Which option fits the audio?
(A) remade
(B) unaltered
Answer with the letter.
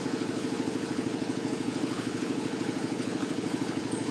A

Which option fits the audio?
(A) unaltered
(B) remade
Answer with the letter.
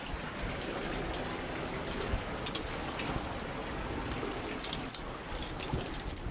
A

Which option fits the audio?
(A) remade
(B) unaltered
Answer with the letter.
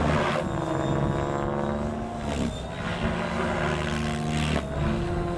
B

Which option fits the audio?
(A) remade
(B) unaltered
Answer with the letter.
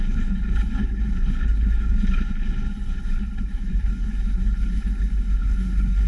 A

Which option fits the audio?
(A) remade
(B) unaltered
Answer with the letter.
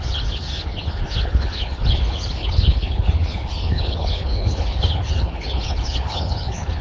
A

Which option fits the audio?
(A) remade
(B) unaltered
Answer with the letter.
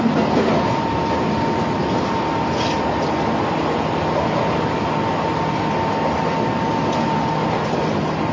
B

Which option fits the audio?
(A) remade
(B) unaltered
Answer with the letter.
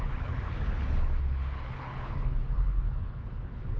A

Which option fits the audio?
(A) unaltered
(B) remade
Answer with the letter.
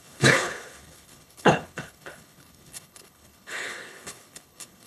B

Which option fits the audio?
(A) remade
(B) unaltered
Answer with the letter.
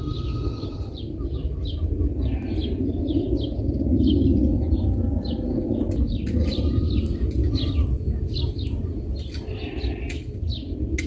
B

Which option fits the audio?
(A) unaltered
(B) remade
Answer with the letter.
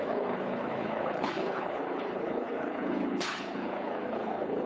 B